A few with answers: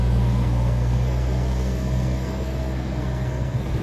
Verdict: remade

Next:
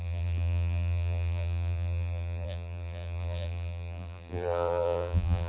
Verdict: remade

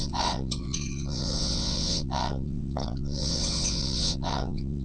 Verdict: remade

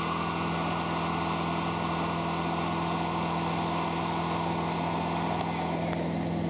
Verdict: recorded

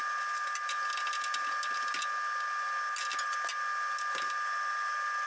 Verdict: recorded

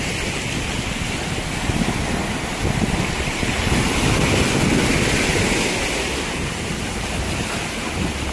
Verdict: recorded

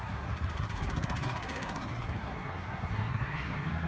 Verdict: remade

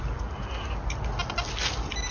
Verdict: recorded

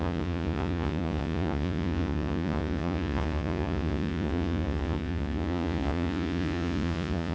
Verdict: remade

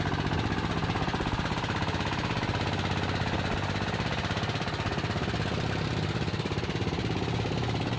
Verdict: recorded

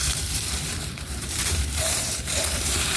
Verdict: remade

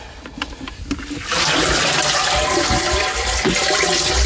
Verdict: recorded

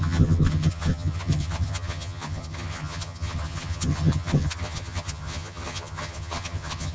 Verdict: remade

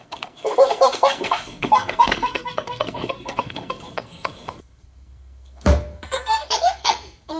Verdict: remade